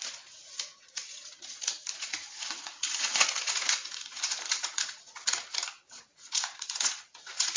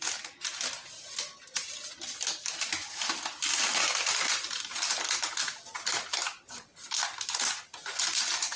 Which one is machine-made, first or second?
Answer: first